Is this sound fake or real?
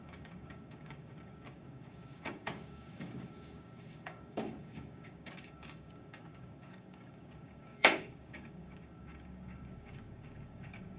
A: fake